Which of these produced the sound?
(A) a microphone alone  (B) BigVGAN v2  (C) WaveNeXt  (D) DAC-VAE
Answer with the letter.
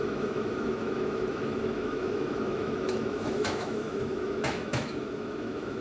D